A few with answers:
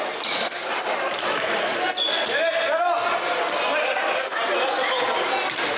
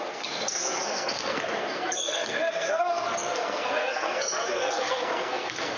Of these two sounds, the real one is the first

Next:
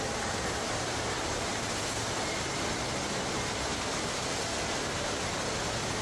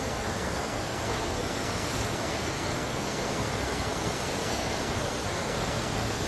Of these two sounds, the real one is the first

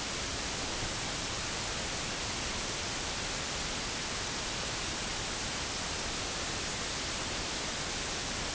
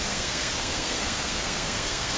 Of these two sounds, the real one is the first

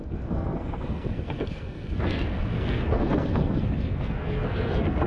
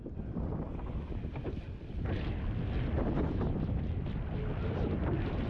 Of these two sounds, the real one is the second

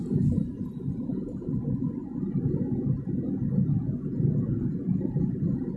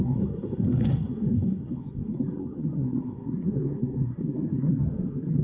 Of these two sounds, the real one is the first